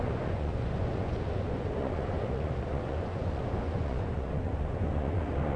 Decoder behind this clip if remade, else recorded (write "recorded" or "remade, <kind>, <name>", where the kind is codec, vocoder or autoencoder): remade, vocoder, Vocos